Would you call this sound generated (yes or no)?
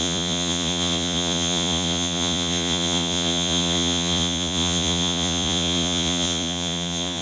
yes